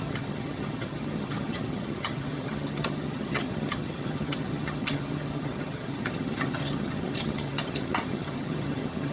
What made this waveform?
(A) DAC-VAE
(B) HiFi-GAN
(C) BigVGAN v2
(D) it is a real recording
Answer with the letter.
B